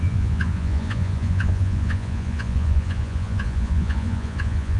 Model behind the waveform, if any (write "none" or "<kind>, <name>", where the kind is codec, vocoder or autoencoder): vocoder, Vocos